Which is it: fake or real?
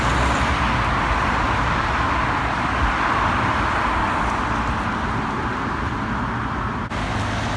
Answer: real